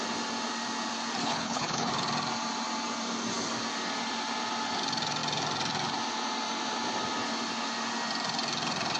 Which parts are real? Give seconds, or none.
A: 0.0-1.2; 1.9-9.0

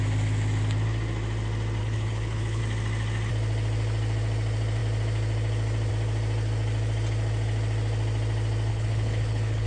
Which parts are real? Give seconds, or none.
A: 0.0-1.8; 2.6-8.7

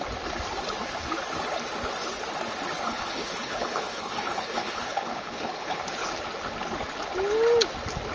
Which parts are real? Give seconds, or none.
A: 0.0-2.9; 5.8-8.1